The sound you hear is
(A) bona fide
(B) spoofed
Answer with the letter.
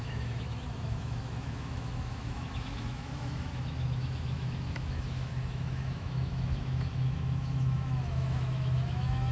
B